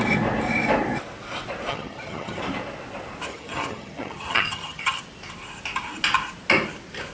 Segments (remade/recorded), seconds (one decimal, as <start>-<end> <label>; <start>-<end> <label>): 0.0-1.7 recorded; 1.7-2.4 remade; 2.4-3.3 recorded; 3.3-5.0 remade; 5.0-7.1 recorded